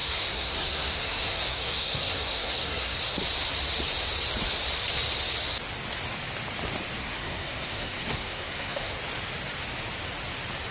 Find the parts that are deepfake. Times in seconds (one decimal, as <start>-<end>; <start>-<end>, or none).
0.0-3.0; 7.0-8.9